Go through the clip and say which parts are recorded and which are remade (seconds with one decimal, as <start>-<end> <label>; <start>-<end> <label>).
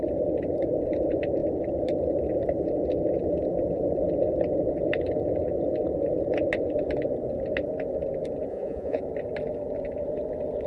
0.0-8.5 recorded; 8.5-9.0 remade; 9.0-10.7 recorded